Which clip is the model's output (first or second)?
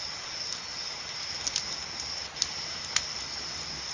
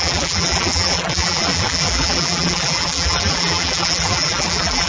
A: second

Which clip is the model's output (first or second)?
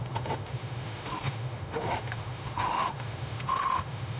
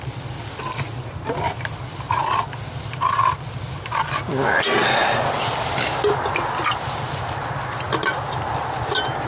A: first